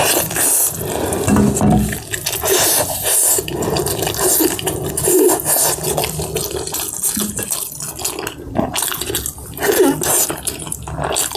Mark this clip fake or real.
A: real